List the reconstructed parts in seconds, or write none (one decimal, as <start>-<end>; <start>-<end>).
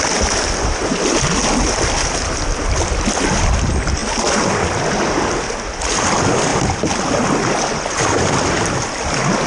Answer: none